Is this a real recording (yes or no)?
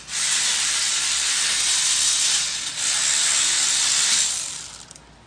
yes